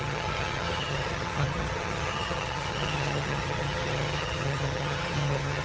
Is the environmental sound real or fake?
fake